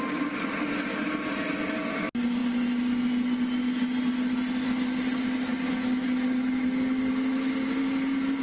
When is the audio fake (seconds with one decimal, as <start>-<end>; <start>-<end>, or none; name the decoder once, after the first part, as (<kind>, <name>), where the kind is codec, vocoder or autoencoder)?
none